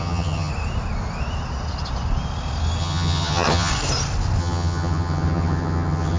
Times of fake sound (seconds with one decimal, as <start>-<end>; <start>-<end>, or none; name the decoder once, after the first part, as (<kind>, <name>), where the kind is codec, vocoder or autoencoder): 0.0-0.5 (vocoder, HiFi-GAN); 2.8-3.7; 4.4-6.2

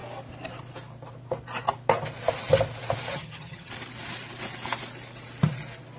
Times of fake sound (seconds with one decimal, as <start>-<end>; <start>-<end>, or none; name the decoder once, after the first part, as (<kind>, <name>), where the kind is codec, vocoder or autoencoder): 3.1-3.7 (vocoder, HiFi-GAN)

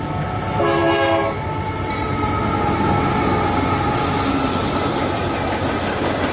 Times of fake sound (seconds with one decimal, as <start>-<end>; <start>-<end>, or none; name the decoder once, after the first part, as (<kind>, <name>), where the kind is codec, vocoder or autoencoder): none

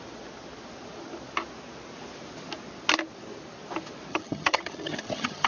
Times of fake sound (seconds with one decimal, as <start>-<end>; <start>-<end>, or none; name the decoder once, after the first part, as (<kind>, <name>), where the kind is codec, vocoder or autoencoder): 4.1-5.5 (vocoder, HiFi-GAN)

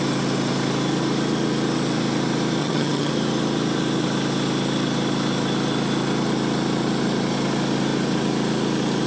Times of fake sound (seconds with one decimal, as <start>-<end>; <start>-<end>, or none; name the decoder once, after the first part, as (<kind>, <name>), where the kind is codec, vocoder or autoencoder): 2.6-3.1 (vocoder, HiFi-GAN)